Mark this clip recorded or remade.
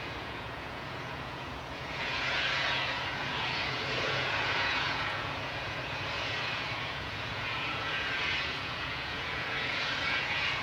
remade